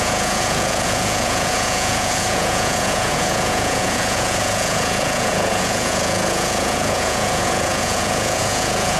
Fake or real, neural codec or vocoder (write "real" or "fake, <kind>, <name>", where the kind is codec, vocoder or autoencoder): fake, vocoder, Vocos